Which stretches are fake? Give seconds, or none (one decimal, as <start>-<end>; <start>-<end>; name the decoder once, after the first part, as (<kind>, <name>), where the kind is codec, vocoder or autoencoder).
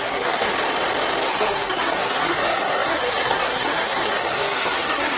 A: 0.0-0.5 (codec, SNAC); 1.3-5.2